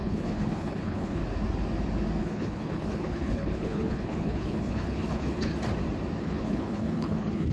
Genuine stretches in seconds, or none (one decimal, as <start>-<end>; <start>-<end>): 1.2-2.2; 5.5-6.2